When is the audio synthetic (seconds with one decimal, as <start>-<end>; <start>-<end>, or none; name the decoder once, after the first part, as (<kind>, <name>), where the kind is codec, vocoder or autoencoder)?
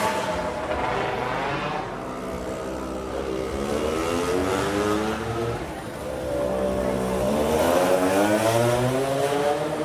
none